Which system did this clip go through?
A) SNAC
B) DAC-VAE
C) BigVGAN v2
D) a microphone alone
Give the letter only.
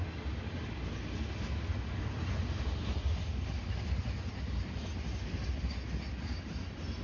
D